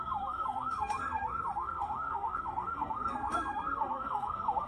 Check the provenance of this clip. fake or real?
fake